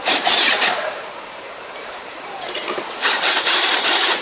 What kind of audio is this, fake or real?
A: fake